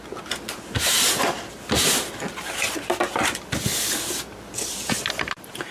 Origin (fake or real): real